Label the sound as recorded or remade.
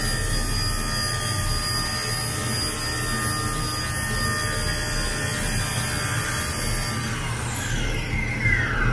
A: recorded